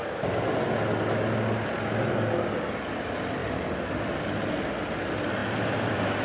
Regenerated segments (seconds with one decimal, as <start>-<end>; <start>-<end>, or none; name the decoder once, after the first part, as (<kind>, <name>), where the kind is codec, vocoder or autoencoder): none